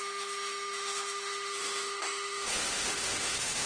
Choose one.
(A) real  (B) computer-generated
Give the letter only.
B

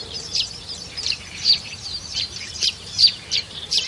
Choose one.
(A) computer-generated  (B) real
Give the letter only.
A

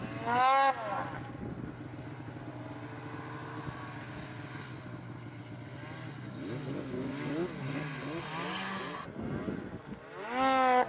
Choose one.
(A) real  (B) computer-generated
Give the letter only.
A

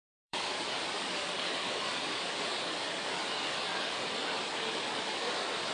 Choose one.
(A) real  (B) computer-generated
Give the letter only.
B